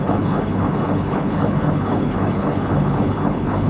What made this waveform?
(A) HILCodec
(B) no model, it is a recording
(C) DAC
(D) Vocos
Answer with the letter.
A